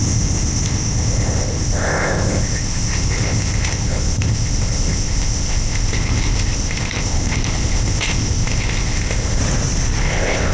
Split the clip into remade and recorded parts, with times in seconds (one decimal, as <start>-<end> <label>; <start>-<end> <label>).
0.0-9.4 remade; 9.4-10.0 recorded; 10.0-10.5 remade